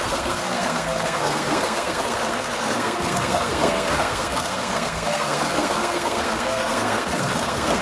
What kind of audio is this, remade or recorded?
remade